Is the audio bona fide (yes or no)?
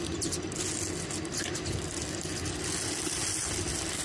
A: yes